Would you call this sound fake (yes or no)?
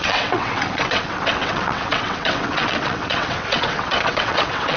yes